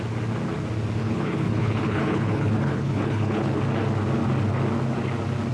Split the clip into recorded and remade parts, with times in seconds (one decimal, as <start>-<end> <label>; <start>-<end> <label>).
0.0-1.0 recorded; 1.0-3.6 remade; 3.6-5.5 recorded